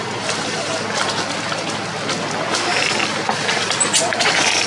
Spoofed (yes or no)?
no